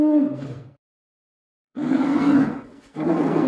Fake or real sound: fake